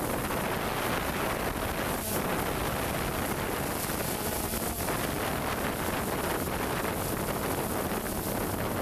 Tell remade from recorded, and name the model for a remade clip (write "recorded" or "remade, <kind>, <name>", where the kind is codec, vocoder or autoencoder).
recorded